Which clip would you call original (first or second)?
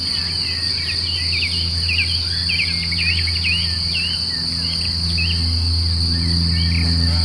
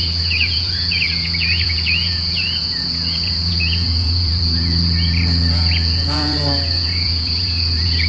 first